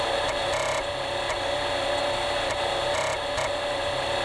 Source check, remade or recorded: recorded